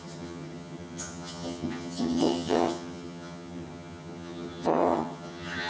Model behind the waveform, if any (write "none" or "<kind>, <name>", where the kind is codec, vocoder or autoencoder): vocoder, HiFi-GAN